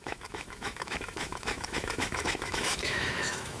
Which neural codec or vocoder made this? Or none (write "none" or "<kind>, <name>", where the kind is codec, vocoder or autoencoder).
autoencoder, DAC-VAE